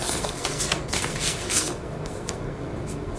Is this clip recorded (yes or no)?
no